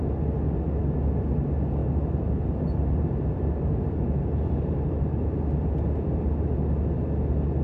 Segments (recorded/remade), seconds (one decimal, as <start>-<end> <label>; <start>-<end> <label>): 0.0-1.8 recorded; 1.8-5.4 remade; 5.4-7.6 recorded